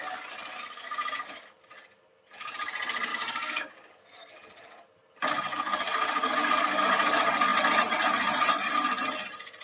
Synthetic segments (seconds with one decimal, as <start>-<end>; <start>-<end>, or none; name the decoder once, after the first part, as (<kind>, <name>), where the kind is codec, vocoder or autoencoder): 3.1-3.9 (codec, DAC)